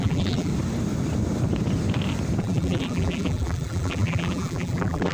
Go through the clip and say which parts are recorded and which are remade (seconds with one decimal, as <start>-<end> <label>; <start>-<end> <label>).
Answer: 0.0-0.5 remade; 0.5-2.4 recorded; 2.4-5.1 remade